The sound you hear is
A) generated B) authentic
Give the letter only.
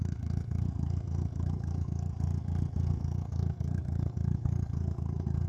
A